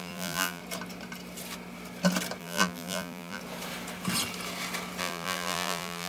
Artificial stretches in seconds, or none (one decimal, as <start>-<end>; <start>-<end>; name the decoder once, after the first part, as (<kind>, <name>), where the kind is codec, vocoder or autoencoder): 0.0-0.6 (vocoder, BigVGAN v2); 2.4-3.4; 5.0-6.1